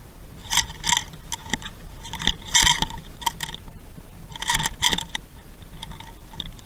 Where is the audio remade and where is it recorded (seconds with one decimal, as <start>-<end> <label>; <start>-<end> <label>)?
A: 0.0-0.4 recorded; 0.4-2.0 remade; 2.0-4.9 recorded; 4.9-6.7 remade